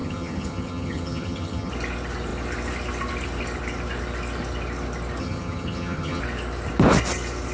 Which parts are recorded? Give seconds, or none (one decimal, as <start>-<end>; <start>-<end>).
1.7-5.2; 6.2-7.5